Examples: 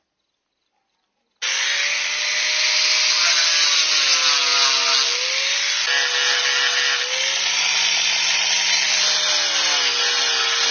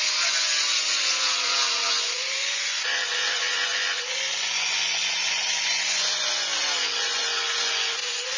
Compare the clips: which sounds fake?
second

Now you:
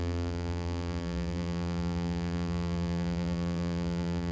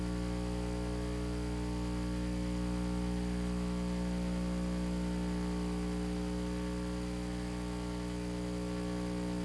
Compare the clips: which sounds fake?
first